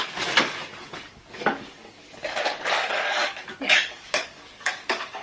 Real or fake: fake